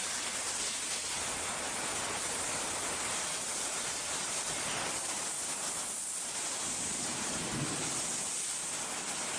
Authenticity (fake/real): real